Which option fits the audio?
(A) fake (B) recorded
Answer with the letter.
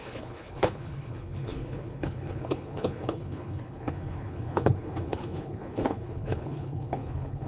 A